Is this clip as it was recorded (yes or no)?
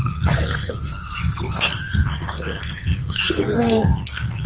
no